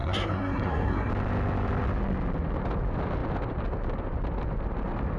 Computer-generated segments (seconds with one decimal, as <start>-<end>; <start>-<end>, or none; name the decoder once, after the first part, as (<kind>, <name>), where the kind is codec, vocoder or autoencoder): 0.0-1.1 (codec, SNAC)